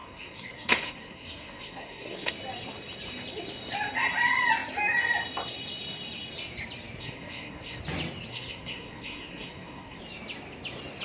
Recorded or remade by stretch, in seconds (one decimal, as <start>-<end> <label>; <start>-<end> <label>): 0.0-2.3 remade; 2.3-7.0 recorded; 7.0-7.8 remade; 7.8-8.3 recorded; 8.3-10.0 remade; 10.0-11.0 recorded